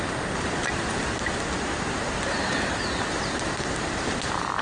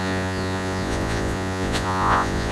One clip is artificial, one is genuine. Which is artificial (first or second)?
second